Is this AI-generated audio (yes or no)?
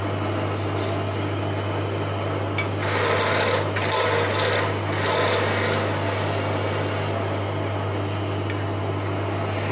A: no